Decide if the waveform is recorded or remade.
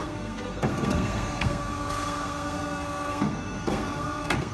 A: remade